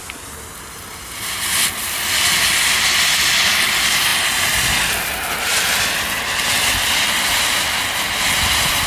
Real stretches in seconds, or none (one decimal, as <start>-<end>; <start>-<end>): 0.0-8.9